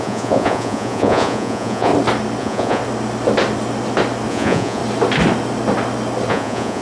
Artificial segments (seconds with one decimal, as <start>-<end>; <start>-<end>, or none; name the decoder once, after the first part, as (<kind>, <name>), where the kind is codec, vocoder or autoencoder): 0.0-1.9 (vocoder, Vocos); 2.4-2.8; 4.3-4.8; 6.3-6.8